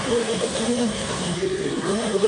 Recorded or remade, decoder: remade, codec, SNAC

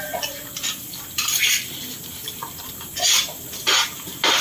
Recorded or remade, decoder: recorded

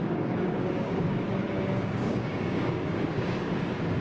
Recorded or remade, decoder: remade, codec, DAC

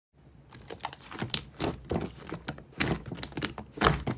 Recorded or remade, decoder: recorded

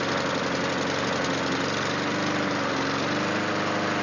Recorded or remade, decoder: recorded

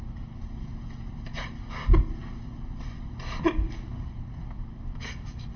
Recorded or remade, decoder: recorded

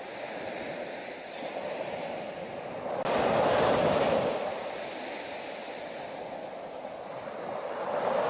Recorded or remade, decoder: recorded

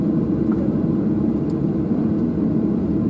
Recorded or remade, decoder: recorded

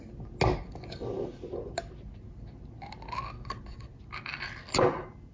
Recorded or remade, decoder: recorded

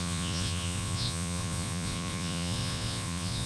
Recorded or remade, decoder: remade, vocoder, Vocos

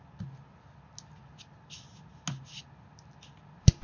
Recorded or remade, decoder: recorded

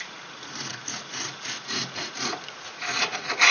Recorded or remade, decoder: remade, vocoder, Vocos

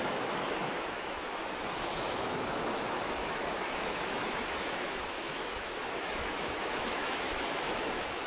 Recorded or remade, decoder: remade, autoencoder, DAC-VAE